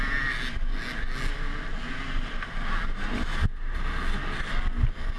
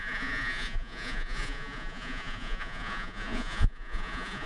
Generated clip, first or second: second